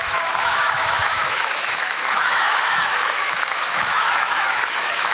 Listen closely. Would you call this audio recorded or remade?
remade